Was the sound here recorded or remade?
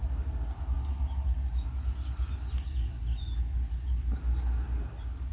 recorded